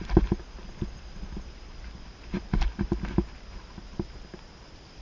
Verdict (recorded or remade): recorded